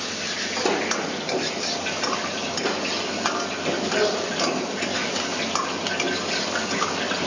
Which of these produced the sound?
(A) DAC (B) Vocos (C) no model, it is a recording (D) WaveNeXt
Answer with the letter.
C